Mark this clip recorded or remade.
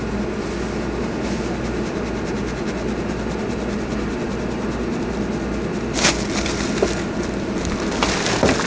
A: recorded